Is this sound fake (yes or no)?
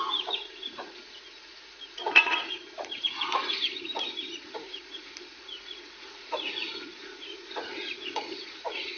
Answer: yes